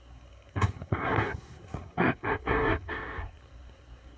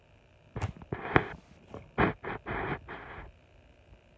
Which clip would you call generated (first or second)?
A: first